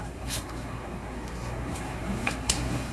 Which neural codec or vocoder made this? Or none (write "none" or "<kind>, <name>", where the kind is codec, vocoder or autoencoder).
codec, SNAC